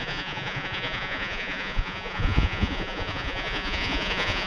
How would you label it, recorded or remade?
remade